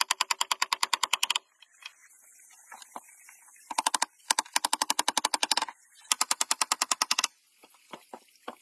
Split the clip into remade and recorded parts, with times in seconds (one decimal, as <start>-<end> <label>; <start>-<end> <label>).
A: 0.0-8.6 recorded